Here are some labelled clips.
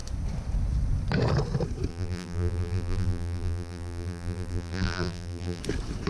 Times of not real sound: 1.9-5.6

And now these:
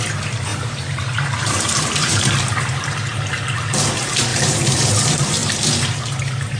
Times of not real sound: 0.5-2.4; 4.3-4.9

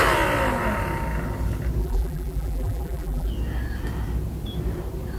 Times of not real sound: 1.8-3.3

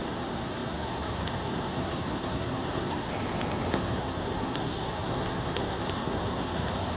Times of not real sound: 0.0-3.1; 3.7-7.0

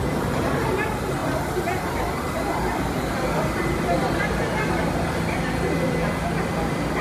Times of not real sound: 1.2-5.4

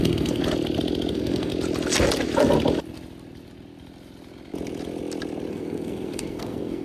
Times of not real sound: 0.0-0.4; 1.1-1.5; 5.5-6.8

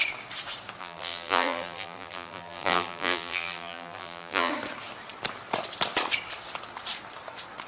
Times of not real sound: 0.8-4.5